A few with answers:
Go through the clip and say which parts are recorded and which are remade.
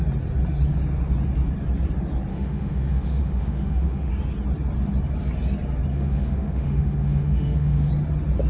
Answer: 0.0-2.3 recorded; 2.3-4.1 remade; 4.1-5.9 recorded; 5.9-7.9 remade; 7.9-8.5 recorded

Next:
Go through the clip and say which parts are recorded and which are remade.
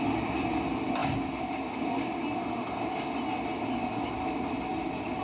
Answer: 0.0-5.2 recorded